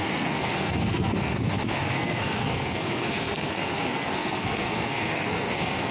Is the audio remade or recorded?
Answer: remade